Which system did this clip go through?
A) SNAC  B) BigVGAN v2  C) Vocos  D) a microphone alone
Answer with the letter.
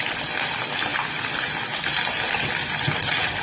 B